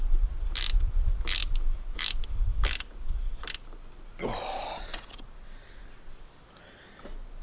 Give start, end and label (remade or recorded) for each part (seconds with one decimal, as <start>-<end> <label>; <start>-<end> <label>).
0.0-7.4 recorded